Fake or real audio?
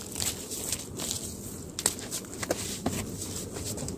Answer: fake